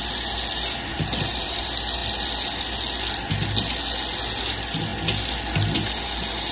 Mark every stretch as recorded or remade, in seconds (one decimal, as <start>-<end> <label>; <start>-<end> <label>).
0.0-0.9 recorded; 0.9-1.6 remade; 1.6-6.5 recorded